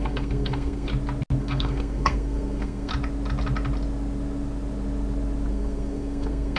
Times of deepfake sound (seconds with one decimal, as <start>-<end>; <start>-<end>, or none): 0.0-0.9; 1.4-2.9; 5.5-6.6